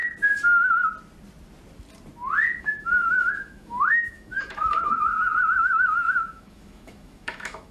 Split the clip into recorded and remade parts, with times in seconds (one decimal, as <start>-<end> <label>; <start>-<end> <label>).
0.0-2.6 recorded; 2.6-7.7 remade